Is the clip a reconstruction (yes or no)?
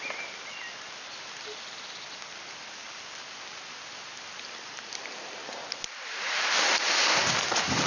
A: no